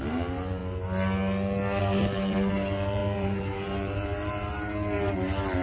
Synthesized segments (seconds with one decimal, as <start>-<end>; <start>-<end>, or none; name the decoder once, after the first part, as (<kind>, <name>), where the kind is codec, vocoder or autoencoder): 0.0-0.6 (vocoder, BigVGAN v2); 1.8-5.6